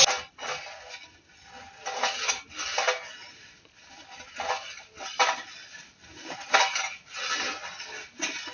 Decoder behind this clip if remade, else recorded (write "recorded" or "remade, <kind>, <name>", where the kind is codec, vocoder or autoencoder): recorded